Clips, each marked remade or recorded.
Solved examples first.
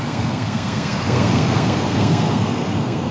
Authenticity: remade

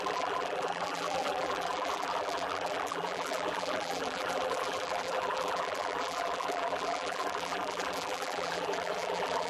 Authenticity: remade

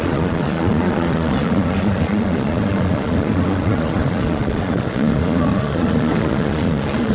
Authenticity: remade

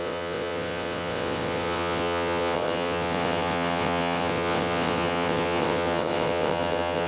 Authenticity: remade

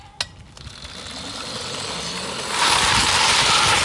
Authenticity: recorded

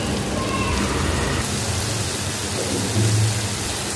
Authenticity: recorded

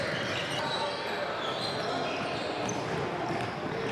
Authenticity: recorded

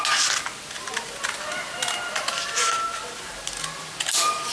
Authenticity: recorded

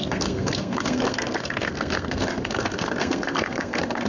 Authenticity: remade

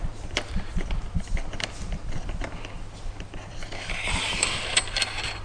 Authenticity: remade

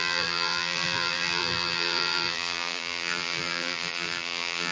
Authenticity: remade